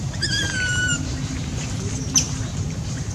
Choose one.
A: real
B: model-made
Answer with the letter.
B